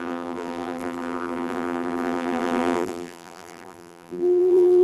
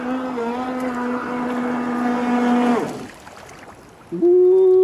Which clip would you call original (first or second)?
second